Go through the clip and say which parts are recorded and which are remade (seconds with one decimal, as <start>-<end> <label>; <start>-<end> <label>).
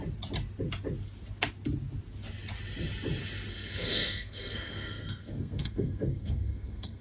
0.0-3.5 recorded; 3.5-7.0 remade